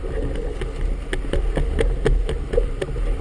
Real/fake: real